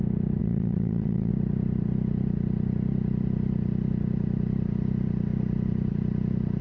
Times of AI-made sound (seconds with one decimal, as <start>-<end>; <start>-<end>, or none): 0.4-1.3